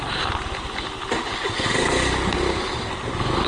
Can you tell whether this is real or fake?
real